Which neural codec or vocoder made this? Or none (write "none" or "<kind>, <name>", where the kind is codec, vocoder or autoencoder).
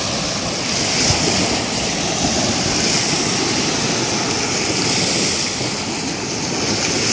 none